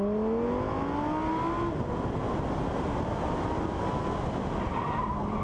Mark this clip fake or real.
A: real